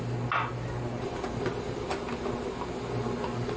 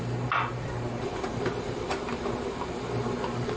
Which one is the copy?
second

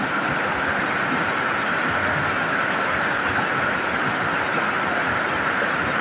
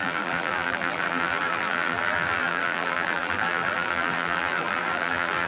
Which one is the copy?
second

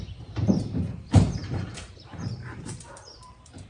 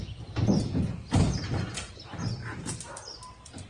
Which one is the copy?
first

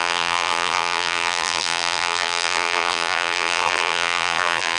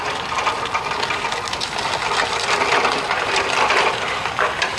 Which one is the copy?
first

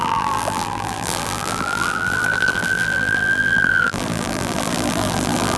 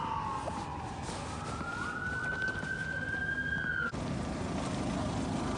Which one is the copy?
first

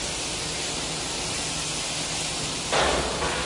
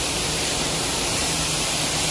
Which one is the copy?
second